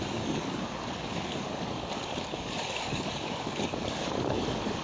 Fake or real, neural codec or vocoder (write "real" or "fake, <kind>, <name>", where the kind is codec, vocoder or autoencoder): fake, codec, DAC